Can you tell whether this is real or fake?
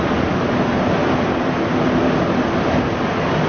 real